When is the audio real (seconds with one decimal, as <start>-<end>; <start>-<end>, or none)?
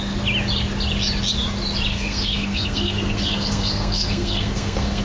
0.0-1.9